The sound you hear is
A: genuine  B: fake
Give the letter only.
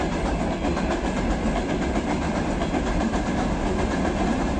A